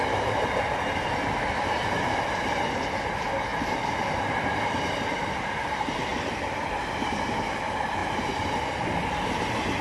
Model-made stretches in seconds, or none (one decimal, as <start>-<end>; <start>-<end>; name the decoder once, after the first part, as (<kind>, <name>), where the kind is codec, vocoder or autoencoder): 6.1-6.8 (vocoder, BigVGAN v2)